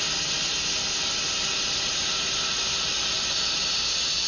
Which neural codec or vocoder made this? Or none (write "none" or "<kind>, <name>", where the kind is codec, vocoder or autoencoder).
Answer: none